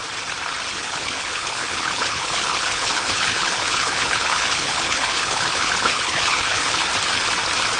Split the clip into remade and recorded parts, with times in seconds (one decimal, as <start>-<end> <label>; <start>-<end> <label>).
0.0-0.7 recorded; 0.7-6.9 remade; 6.9-7.8 recorded